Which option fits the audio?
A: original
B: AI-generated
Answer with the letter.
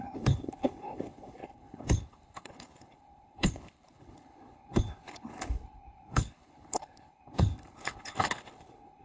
B